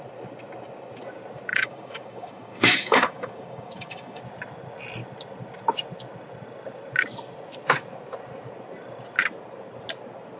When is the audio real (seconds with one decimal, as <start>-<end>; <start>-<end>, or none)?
0.0-1.5; 4.2-10.4